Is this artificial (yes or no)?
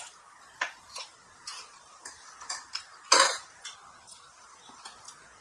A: no